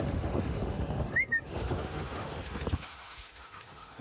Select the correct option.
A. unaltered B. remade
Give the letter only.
B